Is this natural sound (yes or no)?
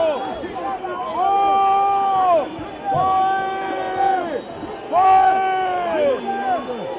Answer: yes